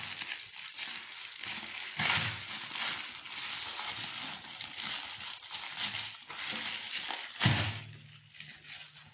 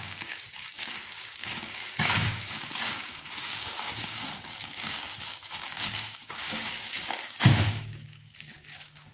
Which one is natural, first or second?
first